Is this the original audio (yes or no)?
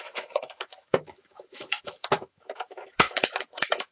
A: no